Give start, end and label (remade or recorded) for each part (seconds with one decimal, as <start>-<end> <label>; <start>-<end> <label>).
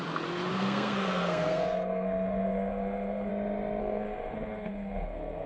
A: 0.0-0.5 recorded; 0.5-3.3 remade; 3.3-3.8 recorded; 3.8-5.5 remade